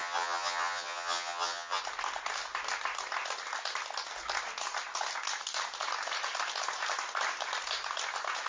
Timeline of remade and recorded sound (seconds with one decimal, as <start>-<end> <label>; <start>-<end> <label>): 0.0-1.8 remade; 1.8-8.5 recorded